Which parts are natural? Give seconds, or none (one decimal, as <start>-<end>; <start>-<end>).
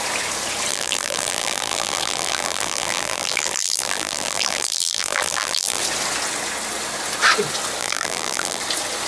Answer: 0.0-0.7; 5.8-7.8; 8.6-9.1